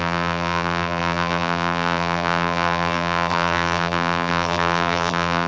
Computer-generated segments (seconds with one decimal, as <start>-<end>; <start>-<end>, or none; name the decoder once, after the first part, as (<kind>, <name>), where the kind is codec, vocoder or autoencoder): 0.0-5.5 (vocoder, BigVGAN v2)